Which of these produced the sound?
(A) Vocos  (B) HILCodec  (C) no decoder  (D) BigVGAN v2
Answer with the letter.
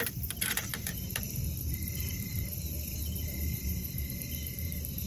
D